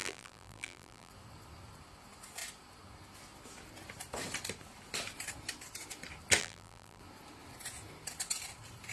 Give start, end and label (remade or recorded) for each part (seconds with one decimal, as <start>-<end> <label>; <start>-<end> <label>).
0.0-1.1 remade; 1.1-6.4 recorded; 6.4-7.0 remade; 7.0-8.9 recorded